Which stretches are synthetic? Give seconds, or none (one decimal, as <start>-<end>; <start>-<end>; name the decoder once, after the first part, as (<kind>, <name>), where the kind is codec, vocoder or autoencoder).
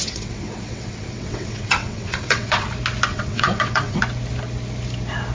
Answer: 0.0-2.7 (vocoder, WaveNeXt); 3.1-4.0